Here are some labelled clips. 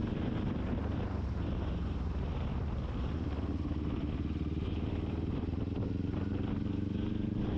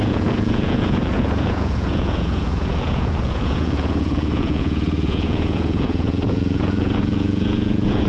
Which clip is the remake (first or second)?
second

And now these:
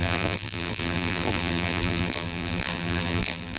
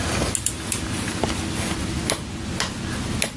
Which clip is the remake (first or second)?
first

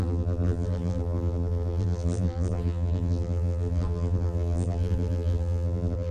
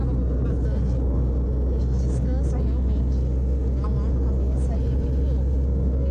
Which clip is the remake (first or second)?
first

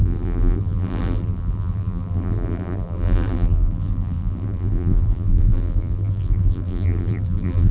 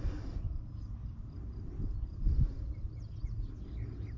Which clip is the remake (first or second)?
first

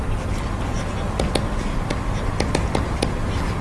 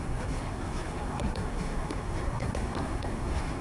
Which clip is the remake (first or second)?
second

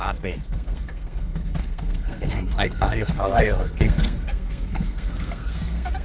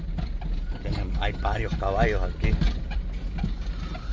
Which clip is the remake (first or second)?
first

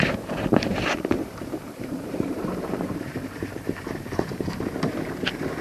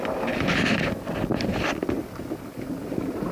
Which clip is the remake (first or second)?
first